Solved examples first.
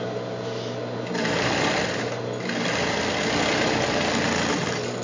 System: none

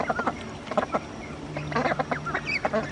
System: none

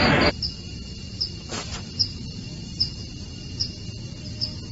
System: none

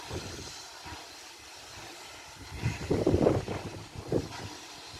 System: none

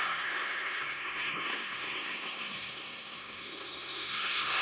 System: codec, SNAC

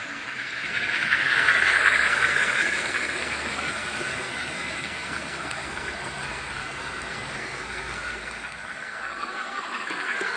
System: codec, SNAC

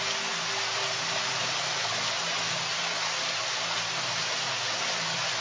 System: none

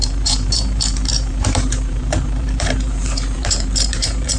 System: vocoder, BigVGAN v2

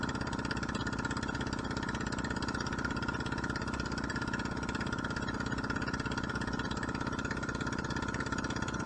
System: none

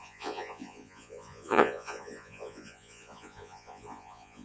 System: vocoder, Vocos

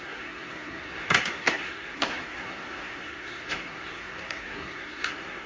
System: codec, SNAC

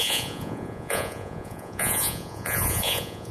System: vocoder, Vocos